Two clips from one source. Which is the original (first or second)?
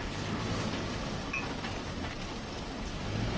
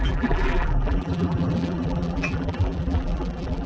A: first